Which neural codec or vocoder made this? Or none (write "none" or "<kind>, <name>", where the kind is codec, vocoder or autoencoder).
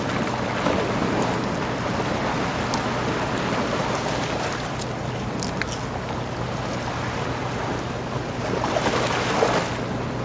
none